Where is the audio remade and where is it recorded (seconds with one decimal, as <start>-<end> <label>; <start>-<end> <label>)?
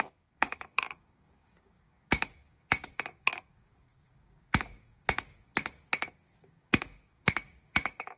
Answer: 0.0-8.2 remade